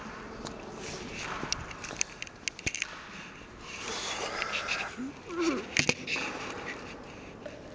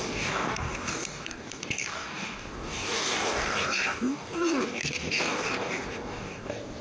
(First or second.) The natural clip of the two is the first